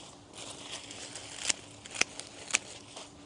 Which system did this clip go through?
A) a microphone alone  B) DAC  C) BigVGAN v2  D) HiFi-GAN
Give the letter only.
A